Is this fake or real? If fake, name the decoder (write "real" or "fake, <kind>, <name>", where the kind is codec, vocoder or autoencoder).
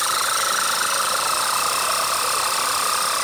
fake, vocoder, BigVGAN v2